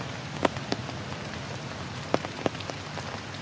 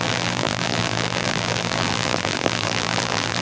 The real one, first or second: first